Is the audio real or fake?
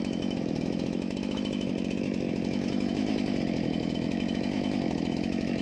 fake